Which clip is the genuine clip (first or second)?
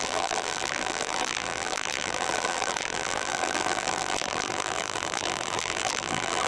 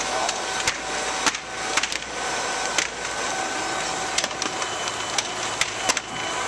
second